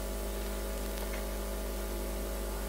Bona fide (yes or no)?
yes